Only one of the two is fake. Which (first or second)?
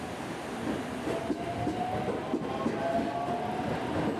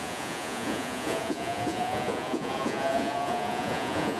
second